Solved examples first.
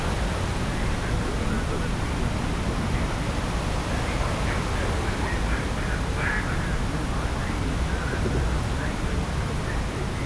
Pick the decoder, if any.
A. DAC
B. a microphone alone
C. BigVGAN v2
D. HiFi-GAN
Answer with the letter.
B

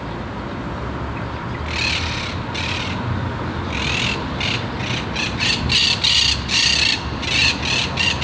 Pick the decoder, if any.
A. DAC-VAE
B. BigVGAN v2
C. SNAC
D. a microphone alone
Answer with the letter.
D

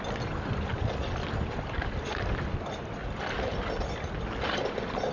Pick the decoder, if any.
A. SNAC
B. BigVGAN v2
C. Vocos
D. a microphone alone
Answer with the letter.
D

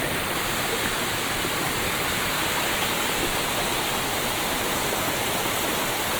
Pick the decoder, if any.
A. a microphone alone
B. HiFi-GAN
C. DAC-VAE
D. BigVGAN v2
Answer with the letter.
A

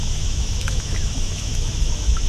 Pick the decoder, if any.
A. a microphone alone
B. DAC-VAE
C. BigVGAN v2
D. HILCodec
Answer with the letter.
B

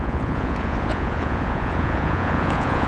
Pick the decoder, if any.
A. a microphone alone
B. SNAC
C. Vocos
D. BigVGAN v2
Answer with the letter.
C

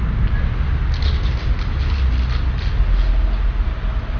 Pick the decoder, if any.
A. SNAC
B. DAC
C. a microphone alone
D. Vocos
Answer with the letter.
C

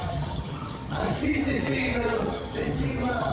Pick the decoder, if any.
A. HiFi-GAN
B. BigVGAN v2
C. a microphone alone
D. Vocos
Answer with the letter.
A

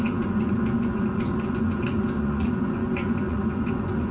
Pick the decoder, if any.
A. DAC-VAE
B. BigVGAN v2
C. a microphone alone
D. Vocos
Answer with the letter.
D